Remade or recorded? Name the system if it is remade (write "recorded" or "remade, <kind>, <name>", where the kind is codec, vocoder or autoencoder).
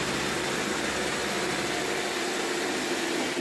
recorded